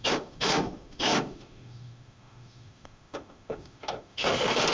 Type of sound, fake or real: fake